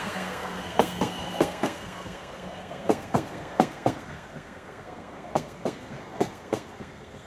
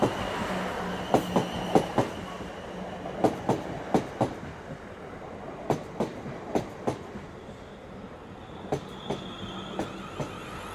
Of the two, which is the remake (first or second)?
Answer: first